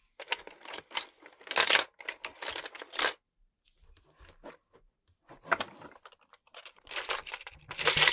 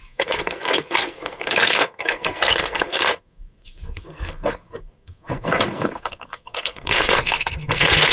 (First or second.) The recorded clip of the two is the first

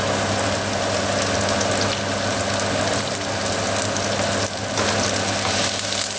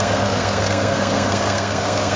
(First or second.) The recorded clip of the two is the first